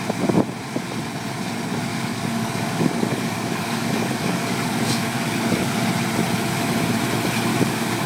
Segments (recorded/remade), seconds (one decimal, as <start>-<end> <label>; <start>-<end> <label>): 0.0-1.9 recorded; 1.9-5.8 remade; 5.8-7.5 recorded; 7.5-8.1 remade